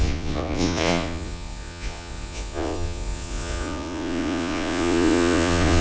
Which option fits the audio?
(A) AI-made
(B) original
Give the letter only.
A